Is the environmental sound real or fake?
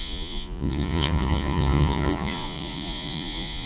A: fake